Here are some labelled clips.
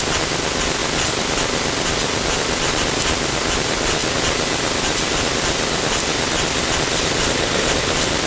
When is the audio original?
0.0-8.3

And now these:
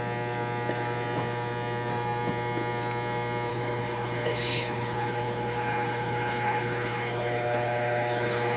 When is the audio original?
0.0-3.5